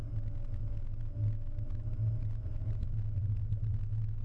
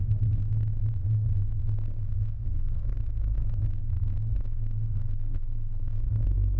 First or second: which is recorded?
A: first